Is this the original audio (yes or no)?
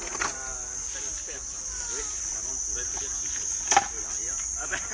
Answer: yes